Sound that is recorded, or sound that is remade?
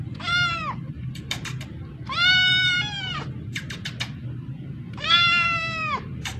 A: remade